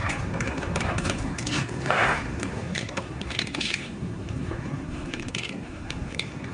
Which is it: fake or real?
fake